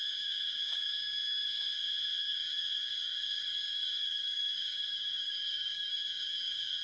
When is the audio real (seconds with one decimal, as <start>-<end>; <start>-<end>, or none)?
1.7-2.2